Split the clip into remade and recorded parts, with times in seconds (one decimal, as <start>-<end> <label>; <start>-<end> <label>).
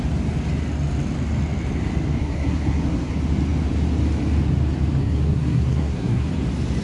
0.0-2.2 recorded; 2.2-3.1 remade; 3.1-5.0 recorded; 5.0-6.3 remade; 6.3-6.8 recorded